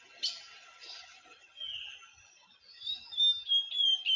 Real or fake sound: real